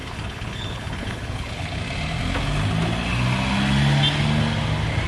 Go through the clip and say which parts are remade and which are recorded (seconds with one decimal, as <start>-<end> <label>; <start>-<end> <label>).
0.0-1.8 remade; 1.8-5.1 recorded